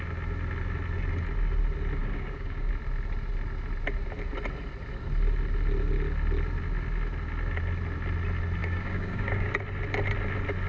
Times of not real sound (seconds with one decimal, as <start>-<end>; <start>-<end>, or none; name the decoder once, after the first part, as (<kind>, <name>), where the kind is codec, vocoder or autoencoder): 2.0-2.7 (codec, DAC); 8.6-9.5